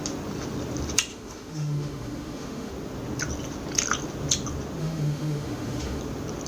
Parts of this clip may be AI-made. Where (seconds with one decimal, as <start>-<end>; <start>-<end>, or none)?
1.1-2.7; 4.8-6.0